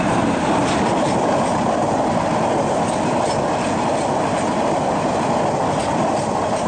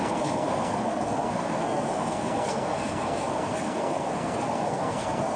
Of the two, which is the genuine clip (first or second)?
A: first